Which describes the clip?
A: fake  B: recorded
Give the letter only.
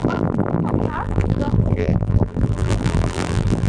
A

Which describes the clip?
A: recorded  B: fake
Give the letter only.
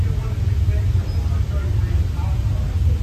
A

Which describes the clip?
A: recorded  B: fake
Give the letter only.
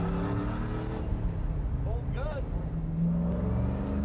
A